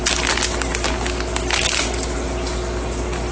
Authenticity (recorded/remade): recorded